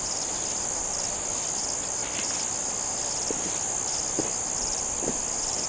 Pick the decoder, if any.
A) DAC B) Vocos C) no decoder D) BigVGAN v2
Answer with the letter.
C